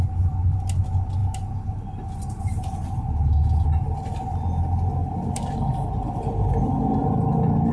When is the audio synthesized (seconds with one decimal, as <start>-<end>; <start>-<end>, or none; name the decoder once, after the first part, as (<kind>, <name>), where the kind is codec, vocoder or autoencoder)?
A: none